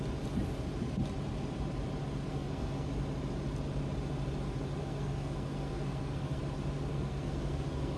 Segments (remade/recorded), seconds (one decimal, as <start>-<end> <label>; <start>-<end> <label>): 0.0-2.3 recorded; 2.3-2.9 remade; 2.9-4.8 recorded; 4.8-6.4 remade; 6.4-6.9 recorded; 6.9-8.0 remade